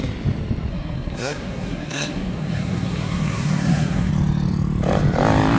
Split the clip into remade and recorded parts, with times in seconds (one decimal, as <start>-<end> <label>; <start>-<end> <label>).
0.0-0.7 recorded; 0.7-4.1 remade; 4.1-5.6 recorded